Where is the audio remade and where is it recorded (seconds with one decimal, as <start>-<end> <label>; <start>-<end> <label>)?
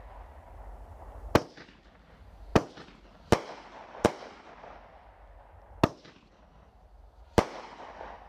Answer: 0.0-8.3 recorded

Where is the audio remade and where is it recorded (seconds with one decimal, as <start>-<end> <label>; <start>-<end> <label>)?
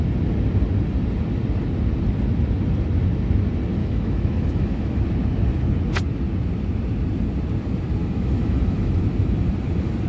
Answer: 0.0-3.8 recorded; 3.8-5.0 remade; 5.0-8.0 recorded; 8.0-9.0 remade; 9.0-10.1 recorded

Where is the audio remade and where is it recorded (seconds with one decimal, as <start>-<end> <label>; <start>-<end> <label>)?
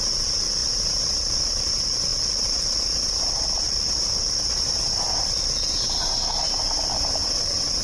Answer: 0.0-7.8 recorded